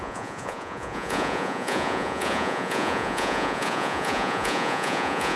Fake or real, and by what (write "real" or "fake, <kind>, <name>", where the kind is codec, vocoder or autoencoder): fake, vocoder, Vocos